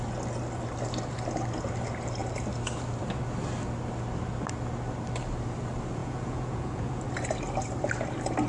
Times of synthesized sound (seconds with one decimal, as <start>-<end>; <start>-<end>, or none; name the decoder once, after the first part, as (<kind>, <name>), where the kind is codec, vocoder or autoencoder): 6.0-7.0 (vocoder, Vocos)